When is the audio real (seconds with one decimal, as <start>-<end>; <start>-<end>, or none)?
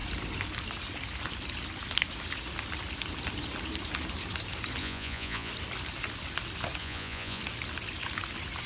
0.0-4.8; 5.5-6.8; 7.4-8.7